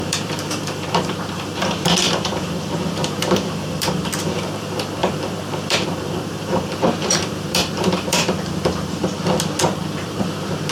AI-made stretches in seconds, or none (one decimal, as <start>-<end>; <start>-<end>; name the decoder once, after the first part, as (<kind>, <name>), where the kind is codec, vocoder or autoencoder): 0.0-9.0 (vocoder, BigVGAN v2); 9.6-10.7